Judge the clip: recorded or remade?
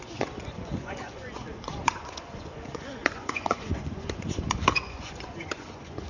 remade